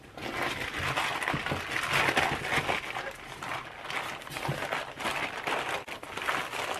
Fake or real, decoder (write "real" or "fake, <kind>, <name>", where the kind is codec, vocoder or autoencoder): real